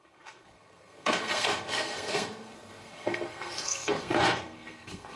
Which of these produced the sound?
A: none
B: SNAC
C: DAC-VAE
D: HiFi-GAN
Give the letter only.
B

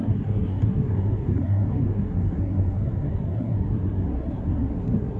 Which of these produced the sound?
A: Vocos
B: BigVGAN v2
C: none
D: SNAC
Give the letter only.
D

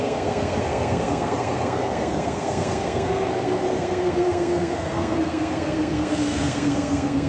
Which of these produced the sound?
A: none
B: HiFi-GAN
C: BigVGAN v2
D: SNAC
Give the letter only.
D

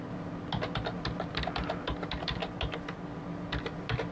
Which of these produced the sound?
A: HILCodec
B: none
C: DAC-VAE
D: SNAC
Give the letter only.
B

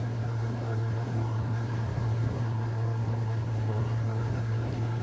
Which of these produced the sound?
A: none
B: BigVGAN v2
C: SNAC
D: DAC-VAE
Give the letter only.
C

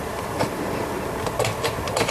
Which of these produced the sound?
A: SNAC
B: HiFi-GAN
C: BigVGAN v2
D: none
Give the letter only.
D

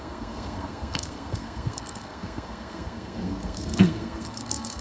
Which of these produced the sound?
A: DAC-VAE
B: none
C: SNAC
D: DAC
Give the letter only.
C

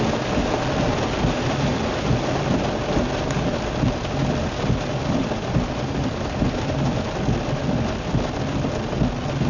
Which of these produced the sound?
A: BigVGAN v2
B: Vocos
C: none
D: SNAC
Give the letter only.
C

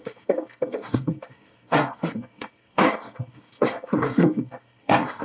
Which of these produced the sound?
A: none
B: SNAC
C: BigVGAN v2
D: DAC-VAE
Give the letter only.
B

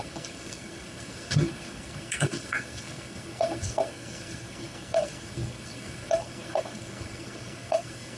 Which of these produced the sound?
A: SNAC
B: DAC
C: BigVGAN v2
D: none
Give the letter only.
A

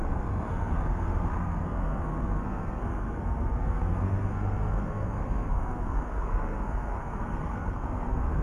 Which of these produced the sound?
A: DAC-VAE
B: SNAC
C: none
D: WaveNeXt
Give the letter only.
B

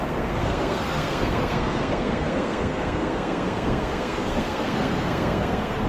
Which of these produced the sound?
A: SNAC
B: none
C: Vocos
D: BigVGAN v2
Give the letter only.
A